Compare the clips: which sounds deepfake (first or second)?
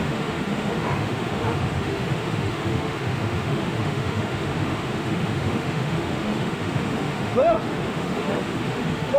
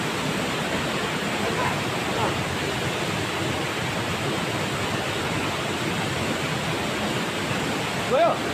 first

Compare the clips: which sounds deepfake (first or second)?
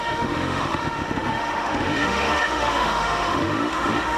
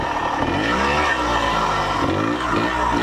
first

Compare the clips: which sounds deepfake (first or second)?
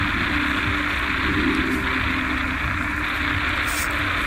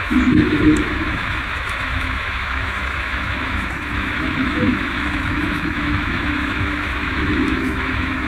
second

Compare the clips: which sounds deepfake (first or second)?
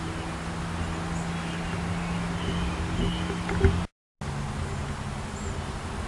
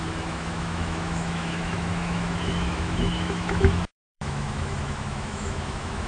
second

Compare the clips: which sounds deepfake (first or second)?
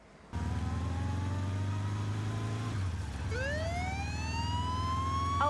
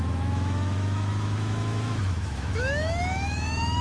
second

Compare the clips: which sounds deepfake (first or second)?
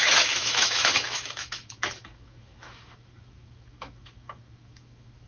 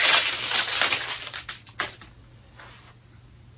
first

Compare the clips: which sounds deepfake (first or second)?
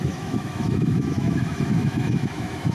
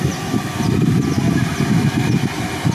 first